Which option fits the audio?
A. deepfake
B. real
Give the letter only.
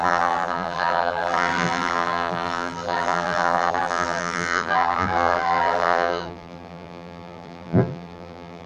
A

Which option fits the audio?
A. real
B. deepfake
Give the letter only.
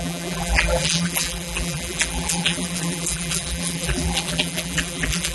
B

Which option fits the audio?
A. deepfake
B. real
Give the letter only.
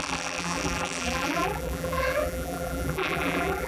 A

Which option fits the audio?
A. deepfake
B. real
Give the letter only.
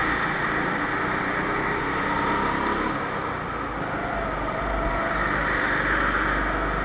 B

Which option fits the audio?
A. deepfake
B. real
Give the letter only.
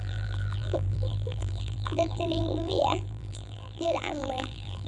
A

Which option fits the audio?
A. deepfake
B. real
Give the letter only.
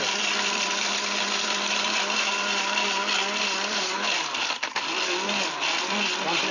A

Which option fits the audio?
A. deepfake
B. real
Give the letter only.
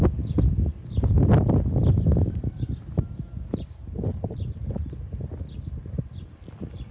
B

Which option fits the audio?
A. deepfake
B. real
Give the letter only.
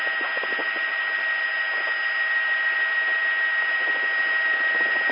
B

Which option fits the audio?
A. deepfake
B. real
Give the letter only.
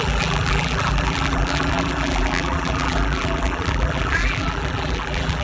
A